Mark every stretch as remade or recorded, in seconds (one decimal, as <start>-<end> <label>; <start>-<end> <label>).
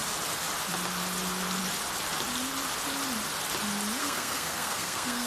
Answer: 0.0-4.0 recorded; 4.0-5.3 remade